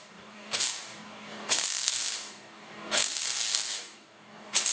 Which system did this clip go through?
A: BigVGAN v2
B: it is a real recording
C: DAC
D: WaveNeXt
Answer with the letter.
C